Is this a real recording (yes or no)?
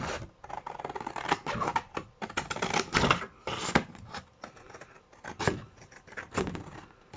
yes